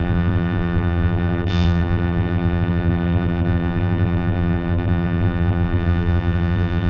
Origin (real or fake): fake